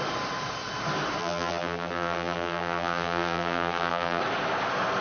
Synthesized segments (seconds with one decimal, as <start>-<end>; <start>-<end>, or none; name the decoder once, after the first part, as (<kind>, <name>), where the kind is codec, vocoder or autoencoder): 1.2-4.2 (vocoder, BigVGAN v2)